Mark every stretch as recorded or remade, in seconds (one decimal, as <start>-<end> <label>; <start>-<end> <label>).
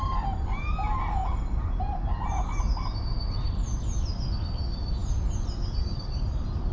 0.0-6.7 recorded